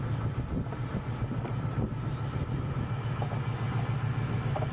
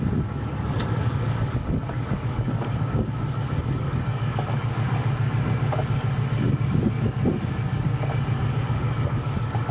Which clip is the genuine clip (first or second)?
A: first